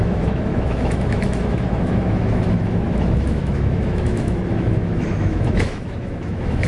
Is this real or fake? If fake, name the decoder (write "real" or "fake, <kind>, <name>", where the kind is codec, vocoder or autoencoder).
fake, autoencoder, DAC-VAE